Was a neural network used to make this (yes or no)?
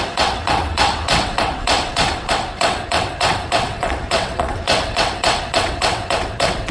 yes